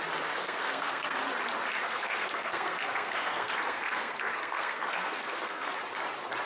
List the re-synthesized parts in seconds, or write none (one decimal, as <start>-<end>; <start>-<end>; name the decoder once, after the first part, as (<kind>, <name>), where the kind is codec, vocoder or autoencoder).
0.4-1.2 (codec, SNAC); 1.8-5.7